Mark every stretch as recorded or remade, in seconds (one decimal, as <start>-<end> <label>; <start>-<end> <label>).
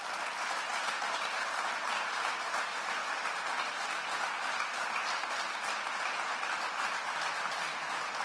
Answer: 0.0-8.2 recorded